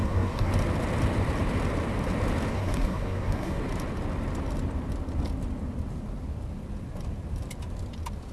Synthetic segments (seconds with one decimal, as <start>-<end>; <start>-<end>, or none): 0.0-0.5; 2.5-3.6